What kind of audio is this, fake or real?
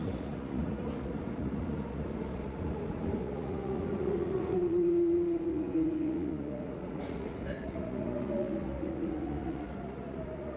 fake